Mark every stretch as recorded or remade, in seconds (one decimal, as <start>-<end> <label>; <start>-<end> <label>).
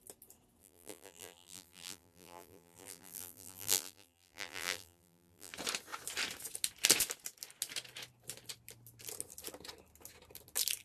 0.0-0.6 recorded; 0.6-5.5 remade; 5.5-10.8 recorded